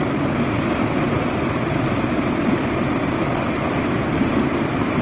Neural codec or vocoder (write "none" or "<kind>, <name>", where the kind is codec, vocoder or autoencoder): none